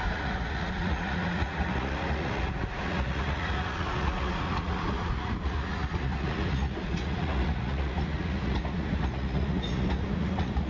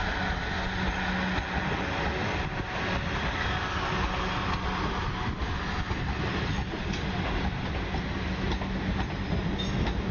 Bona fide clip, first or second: second